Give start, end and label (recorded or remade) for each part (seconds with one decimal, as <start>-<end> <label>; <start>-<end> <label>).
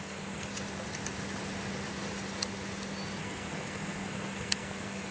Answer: 0.0-0.5 remade; 0.5-3.2 recorded; 3.2-5.1 remade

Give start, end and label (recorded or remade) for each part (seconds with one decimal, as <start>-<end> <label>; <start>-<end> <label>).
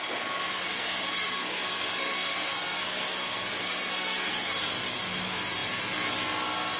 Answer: 0.0-0.6 recorded; 0.6-4.7 remade; 4.7-6.8 recorded